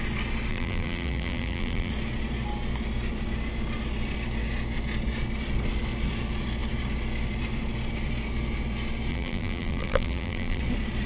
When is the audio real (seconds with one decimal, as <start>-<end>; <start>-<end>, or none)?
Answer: 0.0-0.5; 1.9-9.1; 10.6-11.1